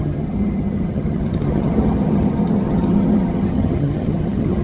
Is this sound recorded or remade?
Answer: remade